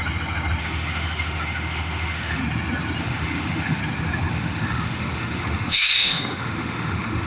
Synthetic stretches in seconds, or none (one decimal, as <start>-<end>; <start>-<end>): 0.6-2.4; 3.0-3.8; 4.3-7.3